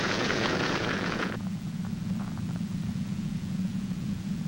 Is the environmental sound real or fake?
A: fake